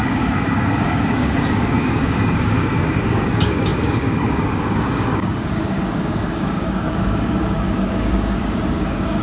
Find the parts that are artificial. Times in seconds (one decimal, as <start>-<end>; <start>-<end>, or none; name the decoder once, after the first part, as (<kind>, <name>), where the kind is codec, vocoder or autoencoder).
0.0-9.2 (codec, DAC)